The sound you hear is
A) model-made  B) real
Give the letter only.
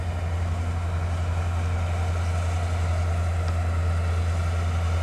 B